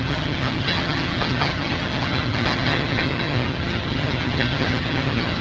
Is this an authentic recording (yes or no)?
no